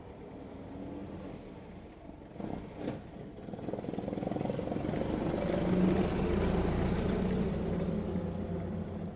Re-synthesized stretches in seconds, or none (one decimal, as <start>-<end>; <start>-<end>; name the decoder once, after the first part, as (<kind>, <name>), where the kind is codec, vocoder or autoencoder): none